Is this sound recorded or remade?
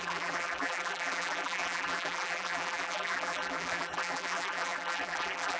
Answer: remade